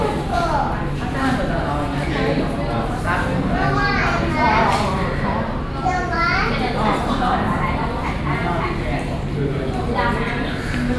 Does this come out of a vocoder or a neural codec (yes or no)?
no